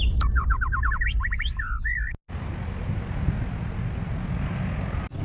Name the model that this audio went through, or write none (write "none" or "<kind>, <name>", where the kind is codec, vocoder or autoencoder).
none